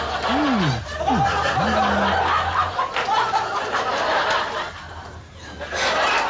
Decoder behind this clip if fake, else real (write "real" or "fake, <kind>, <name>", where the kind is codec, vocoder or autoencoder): real